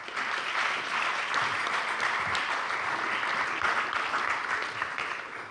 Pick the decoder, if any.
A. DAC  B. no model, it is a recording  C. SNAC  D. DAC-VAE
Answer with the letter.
B